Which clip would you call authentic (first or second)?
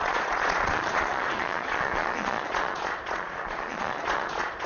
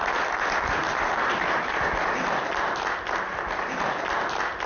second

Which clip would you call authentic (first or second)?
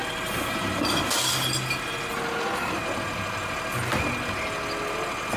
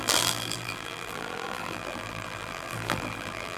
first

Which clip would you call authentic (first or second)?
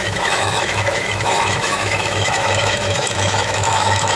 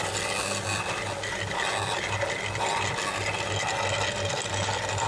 second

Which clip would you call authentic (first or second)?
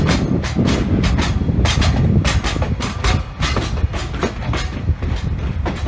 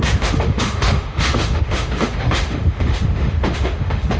first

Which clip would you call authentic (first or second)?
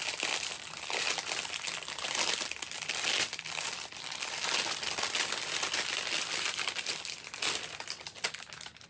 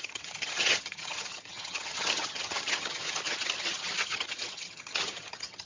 first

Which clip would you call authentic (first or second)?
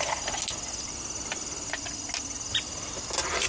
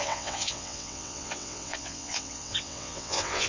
first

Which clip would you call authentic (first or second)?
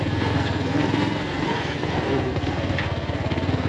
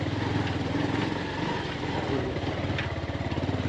second